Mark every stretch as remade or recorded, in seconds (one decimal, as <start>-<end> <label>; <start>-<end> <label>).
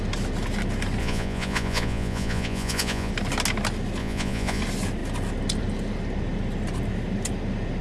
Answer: 0.0-1.0 recorded; 1.0-3.1 remade; 3.1-4.0 recorded; 4.0-4.6 remade; 4.6-7.8 recorded